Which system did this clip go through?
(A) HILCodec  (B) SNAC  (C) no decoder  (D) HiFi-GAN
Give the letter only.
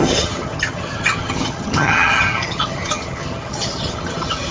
D